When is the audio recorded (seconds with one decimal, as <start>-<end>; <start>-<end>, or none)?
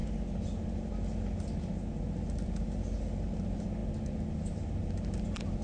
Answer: 0.0-5.6